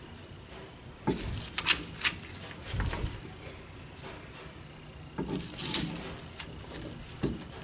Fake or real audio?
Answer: real